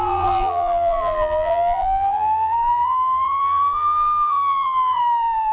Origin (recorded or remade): remade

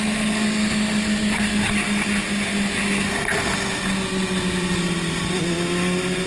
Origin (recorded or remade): recorded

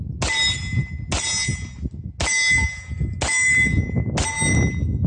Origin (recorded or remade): recorded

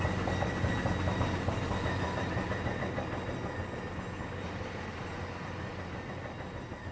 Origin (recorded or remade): recorded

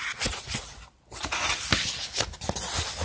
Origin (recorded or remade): recorded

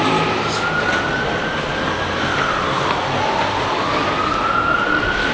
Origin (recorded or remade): recorded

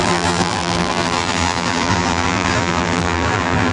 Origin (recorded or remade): remade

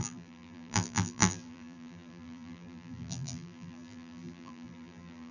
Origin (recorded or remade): remade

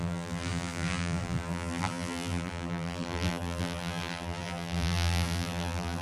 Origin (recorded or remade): remade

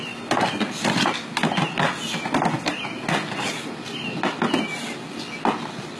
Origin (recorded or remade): recorded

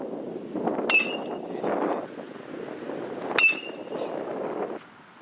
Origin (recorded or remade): recorded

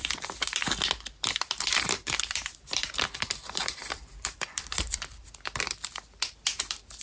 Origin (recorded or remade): remade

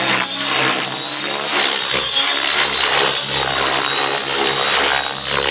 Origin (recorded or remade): recorded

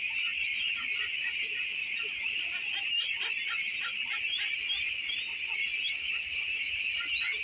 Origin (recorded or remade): recorded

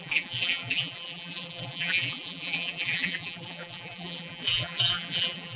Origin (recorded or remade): remade